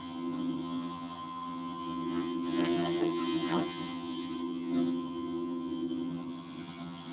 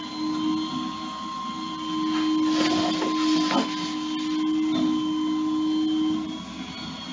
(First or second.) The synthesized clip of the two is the first